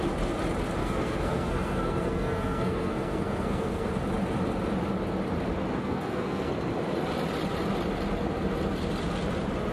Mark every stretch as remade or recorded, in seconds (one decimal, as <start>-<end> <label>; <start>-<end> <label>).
0.0-0.8 recorded; 0.8-3.9 remade; 3.9-5.8 recorded; 5.8-6.5 remade; 6.5-9.7 recorded